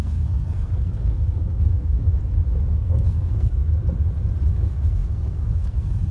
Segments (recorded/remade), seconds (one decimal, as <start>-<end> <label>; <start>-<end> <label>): 0.0-2.2 remade; 2.2-2.7 recorded; 2.7-3.6 remade; 3.6-4.5 recorded; 4.5-6.1 remade